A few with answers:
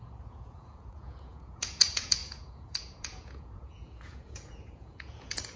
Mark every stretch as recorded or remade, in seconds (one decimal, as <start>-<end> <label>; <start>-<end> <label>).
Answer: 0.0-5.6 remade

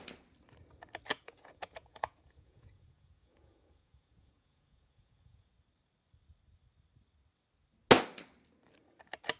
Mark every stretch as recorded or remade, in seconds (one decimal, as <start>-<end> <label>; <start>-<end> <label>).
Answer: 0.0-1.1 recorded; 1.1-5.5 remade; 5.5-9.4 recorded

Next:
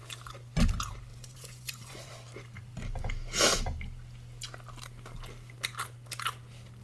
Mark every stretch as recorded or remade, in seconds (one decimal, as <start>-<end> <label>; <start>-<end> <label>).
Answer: 0.0-1.1 recorded; 1.1-2.1 remade; 2.1-6.8 recorded